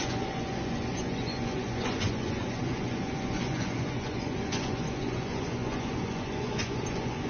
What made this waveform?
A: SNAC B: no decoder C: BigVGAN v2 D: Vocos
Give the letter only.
D